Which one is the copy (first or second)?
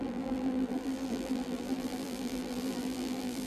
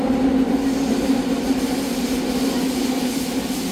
first